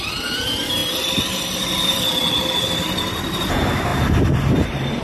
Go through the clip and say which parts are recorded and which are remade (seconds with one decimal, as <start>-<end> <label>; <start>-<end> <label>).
0.0-0.8 remade; 0.8-3.3 recorded; 3.3-3.9 remade; 3.9-4.5 recorded; 4.5-5.0 remade